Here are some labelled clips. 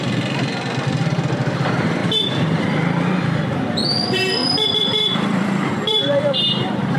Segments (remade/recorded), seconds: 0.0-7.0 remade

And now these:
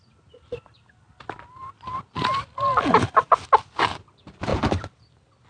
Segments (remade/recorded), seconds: 0.0-5.5 recorded

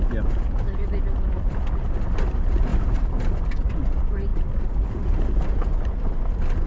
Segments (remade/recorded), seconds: 0.0-2.7 recorded; 2.7-3.8 remade; 3.8-4.3 recorded; 4.3-4.9 remade; 4.9-6.7 recorded

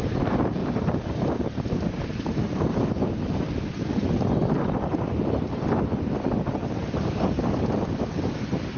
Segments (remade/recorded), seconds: 0.0-0.6 recorded; 0.6-2.9 remade; 2.9-8.8 recorded

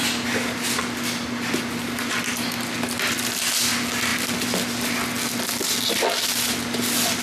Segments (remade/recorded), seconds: 0.0-7.2 recorded

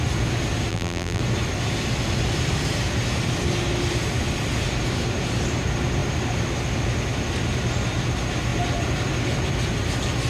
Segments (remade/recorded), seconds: 0.0-0.7 recorded; 0.7-1.2 remade; 1.2-10.3 recorded

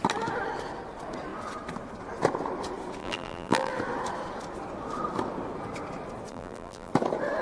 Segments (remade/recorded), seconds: 0.0-3.0 recorded; 3.0-3.7 remade; 3.7-6.3 recorded; 6.3-6.9 remade; 6.9-7.4 recorded

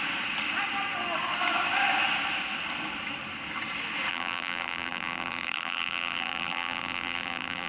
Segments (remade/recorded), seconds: 0.0-4.1 recorded; 4.1-7.7 remade